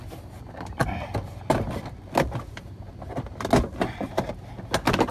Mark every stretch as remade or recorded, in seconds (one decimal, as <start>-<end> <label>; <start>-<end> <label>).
0.0-5.1 recorded